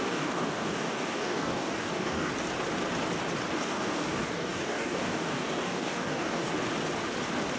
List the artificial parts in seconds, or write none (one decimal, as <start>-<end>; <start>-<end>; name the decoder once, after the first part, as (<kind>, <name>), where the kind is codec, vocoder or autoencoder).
0.0-2.3 (codec, DAC); 3.5-6.5

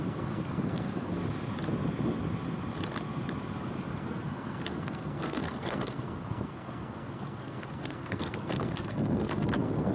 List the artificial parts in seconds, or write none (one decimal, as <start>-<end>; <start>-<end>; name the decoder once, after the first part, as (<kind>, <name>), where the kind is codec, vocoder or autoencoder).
0.0-1.2 (codec, SNAC); 3.9-9.9